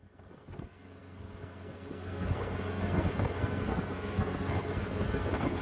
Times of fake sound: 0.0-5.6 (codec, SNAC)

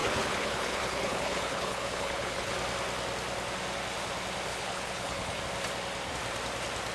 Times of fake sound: 0.0-2.5 (codec, HILCodec); 4.5-5.4

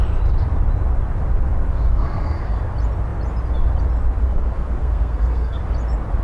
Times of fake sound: 1.7-2.6 (codec, SNAC); 4.2-5.6

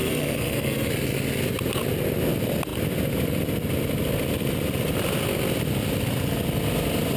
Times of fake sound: 0.0-0.9 (codec, SNAC)

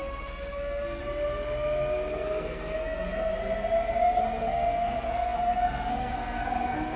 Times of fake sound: 0.0-1.0 (codec, SNAC); 2.1-3.3; 4.0-7.0

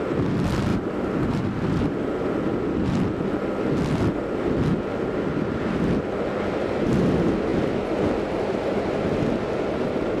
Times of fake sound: 0.7-1.4 (vocoder, BigVGAN v2)

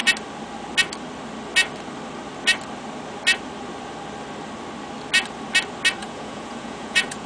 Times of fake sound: 6.0-7.3 (vocoder, Vocos)

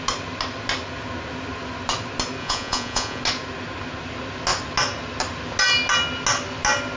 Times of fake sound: 2.4-3.2 (vocoder, Vocos)